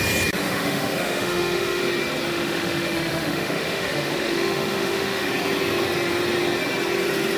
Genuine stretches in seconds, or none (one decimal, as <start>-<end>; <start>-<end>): 0.0-0.4; 1.8-2.3; 5.3-7.4